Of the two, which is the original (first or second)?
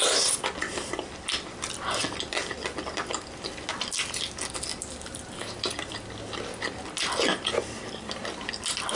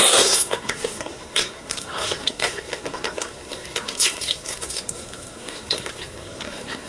first